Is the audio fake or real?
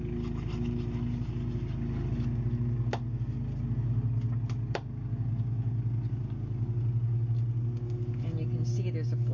real